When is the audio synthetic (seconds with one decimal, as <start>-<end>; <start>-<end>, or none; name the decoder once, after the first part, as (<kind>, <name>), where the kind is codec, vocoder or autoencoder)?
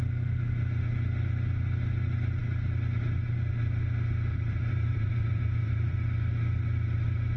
4.3-6.0 (vocoder, BigVGAN v2)